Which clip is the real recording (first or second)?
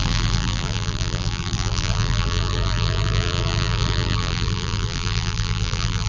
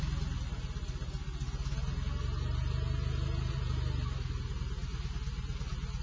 second